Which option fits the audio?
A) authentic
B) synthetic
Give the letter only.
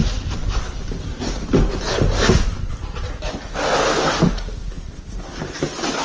A